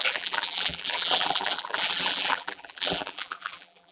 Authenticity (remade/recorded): remade